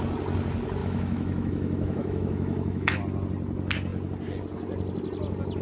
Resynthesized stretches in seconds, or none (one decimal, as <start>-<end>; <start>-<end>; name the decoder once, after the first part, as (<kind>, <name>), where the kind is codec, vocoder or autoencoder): 0.8-3.0 (autoencoder, DAC-VAE)